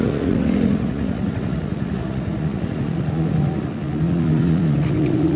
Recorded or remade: remade